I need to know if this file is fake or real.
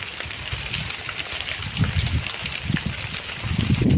real